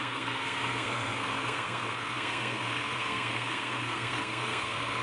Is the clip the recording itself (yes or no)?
no